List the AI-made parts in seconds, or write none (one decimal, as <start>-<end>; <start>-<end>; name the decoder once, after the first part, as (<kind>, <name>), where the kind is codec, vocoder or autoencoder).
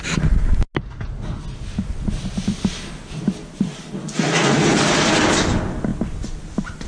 none